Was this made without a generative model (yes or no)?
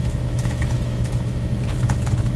no